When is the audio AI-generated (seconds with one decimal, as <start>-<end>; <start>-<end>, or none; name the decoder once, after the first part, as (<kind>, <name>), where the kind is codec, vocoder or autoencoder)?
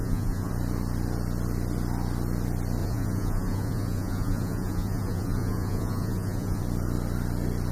0.0-0.5 (vocoder, Vocos); 2.8-6.6